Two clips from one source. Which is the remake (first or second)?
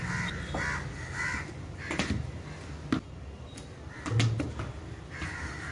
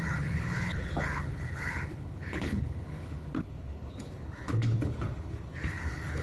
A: second